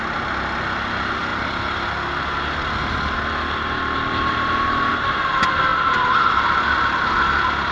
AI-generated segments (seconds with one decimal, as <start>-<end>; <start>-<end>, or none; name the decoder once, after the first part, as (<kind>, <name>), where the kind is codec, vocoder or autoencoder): none